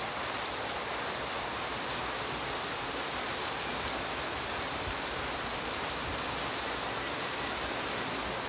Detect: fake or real real